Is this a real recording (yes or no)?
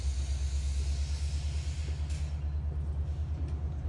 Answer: yes